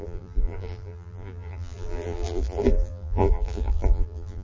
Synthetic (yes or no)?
yes